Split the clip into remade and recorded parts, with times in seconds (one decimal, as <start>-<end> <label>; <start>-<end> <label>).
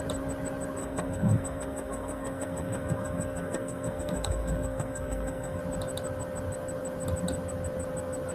0.0-0.8 recorded; 0.8-5.6 remade; 5.6-8.3 recorded